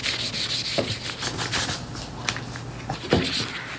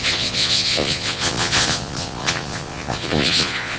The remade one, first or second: second